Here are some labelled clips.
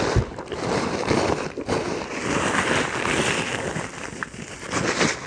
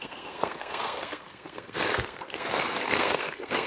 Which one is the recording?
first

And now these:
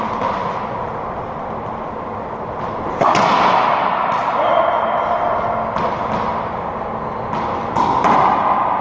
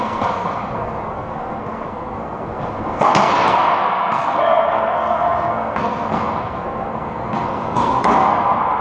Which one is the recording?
first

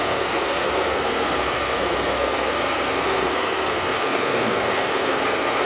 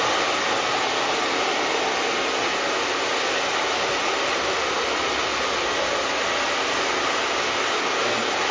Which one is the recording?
second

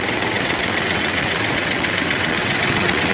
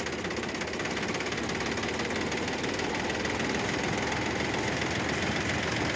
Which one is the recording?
second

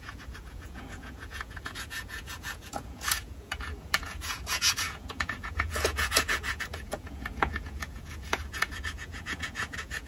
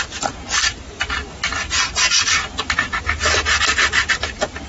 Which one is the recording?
second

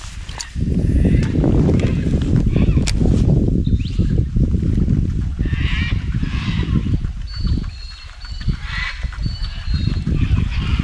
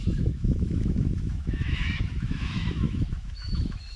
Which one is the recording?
first